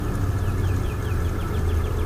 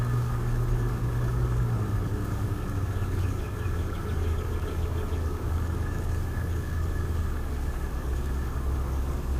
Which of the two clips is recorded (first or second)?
first